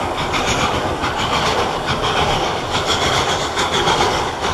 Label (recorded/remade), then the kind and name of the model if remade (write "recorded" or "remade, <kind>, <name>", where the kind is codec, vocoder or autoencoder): remade, codec, DAC